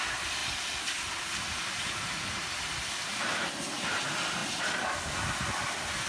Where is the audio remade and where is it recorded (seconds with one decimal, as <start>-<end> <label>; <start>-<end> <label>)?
0.0-6.1 recorded